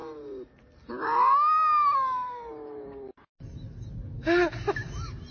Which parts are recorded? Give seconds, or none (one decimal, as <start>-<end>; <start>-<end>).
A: 0.0-5.3